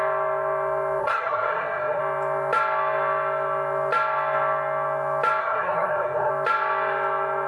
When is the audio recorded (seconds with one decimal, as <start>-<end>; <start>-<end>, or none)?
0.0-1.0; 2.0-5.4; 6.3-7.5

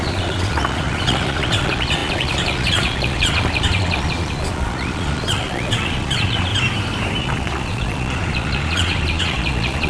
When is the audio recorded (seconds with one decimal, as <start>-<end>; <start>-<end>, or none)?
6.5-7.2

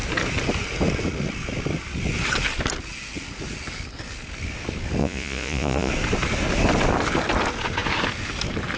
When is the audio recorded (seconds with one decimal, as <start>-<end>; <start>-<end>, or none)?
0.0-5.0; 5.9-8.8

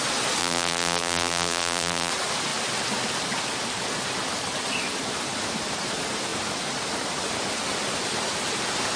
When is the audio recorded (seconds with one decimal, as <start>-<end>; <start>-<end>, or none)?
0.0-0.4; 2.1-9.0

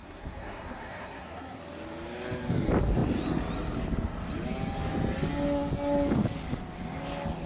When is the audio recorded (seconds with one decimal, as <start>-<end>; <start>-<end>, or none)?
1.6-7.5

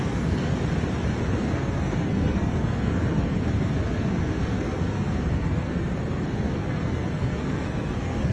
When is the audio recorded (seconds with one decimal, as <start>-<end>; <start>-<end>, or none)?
0.5-1.3